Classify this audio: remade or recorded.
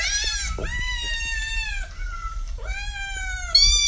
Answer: recorded